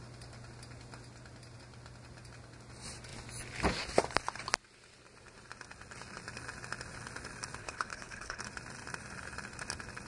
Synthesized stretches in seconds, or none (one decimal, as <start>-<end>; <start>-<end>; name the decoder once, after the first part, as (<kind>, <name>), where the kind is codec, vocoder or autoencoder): 7.6-8.4 (codec, HILCodec)